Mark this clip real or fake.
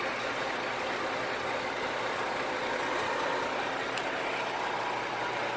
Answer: real